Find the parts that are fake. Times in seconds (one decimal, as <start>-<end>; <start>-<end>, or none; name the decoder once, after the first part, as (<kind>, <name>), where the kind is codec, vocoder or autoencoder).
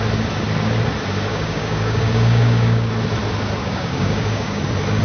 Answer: 1.3-2.9 (codec, DAC); 3.6-4.6